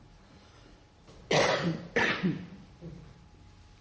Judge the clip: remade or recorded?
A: recorded